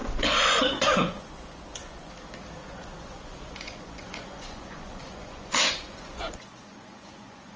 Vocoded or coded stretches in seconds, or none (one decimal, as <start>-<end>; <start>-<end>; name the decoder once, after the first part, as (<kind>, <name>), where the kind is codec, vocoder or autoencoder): 0.0-2.1 (vocoder, Vocos); 2.6-7.6